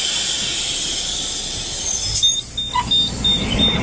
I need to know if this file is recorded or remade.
recorded